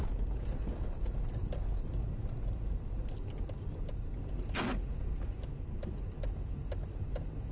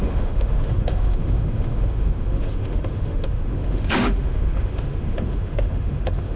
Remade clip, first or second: second